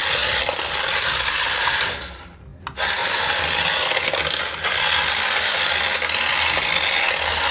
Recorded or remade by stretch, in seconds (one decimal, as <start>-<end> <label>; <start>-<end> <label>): 0.0-7.5 recorded